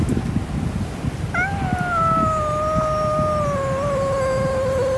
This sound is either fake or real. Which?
real